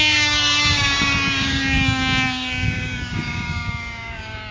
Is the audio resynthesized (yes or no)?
yes